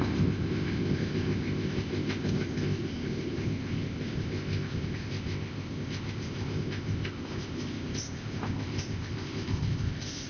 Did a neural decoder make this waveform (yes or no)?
yes